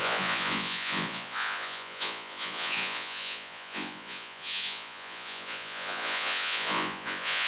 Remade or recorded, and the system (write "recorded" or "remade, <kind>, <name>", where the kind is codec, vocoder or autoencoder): remade, vocoder, Vocos